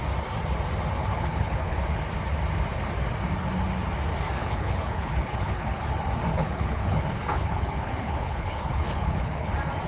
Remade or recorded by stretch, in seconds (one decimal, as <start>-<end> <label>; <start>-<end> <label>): 0.0-1.0 recorded; 1.0-1.8 remade; 1.8-4.4 recorded; 4.4-5.8 remade; 5.8-6.3 recorded; 6.3-9.5 remade; 9.5-9.9 recorded